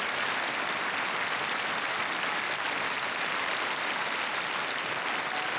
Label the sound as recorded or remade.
recorded